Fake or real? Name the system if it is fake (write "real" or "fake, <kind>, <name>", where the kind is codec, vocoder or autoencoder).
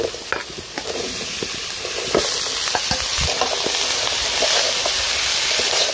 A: real